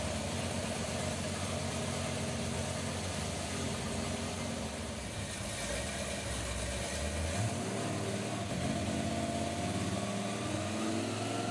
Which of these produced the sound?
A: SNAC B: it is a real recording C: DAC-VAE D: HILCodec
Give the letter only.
B